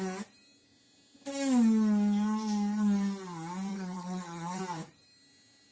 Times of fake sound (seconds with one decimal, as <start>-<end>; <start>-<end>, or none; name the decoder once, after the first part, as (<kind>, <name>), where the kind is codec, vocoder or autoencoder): 3.7-4.6 (vocoder, HiFi-GAN)